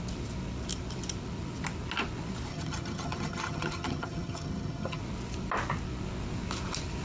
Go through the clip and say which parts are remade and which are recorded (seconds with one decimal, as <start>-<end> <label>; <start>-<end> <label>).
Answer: 0.0-2.5 recorded; 2.5-5.0 remade; 5.0-7.0 recorded